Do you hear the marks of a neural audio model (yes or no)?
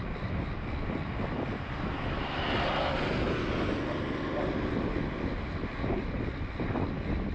no